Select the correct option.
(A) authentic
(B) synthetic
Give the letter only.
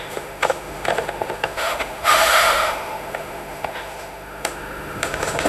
B